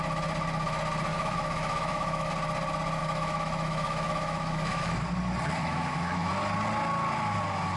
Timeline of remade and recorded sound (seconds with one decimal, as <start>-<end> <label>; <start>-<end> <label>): 0.0-1.1 recorded; 1.1-2.3 remade; 2.3-3.0 recorded; 3.0-5.0 remade; 5.0-5.6 recorded; 5.6-6.3 remade; 6.3-7.8 recorded